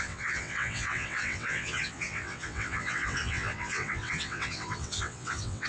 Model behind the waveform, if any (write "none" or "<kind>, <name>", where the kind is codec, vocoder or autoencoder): vocoder, WaveNeXt